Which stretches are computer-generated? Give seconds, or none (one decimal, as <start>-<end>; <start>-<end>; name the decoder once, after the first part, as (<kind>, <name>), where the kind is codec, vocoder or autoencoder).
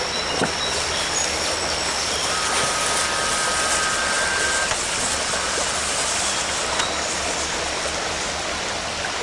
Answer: none